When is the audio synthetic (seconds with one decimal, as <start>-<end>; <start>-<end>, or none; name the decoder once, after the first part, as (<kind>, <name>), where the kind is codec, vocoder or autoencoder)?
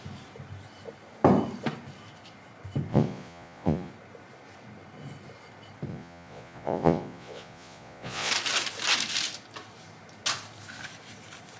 2.9-3.9 (vocoder, Vocos); 5.9-8.3